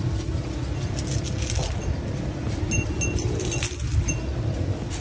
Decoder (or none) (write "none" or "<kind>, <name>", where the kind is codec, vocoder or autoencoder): none